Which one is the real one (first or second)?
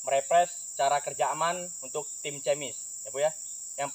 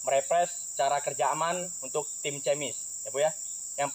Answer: first